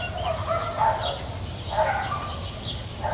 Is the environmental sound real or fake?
real